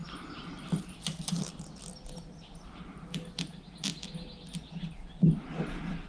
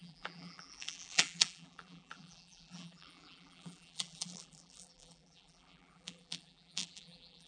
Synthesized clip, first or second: second